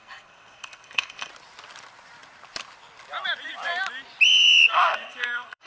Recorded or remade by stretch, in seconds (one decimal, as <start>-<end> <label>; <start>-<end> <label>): 0.0-1.3 remade; 1.3-4.7 recorded; 4.7-5.7 remade